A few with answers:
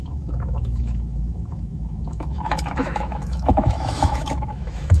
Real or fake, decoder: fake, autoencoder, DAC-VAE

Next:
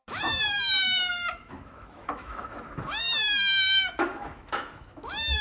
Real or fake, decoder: fake, autoencoder, DAC-VAE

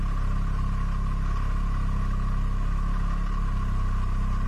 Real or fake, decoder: real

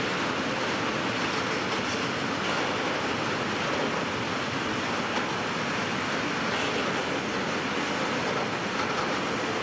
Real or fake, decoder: real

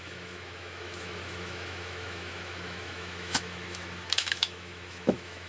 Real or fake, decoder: fake, autoencoder, DAC-VAE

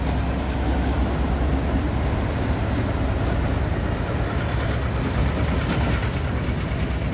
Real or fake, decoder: real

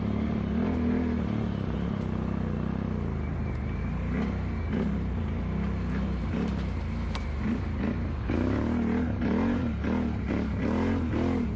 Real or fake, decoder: real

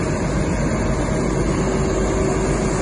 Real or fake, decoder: real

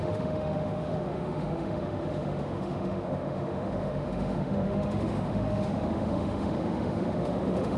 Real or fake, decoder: fake, autoencoder, DAC-VAE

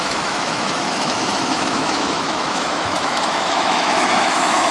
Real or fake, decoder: fake, autoencoder, DAC-VAE